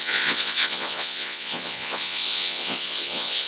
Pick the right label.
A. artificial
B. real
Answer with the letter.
A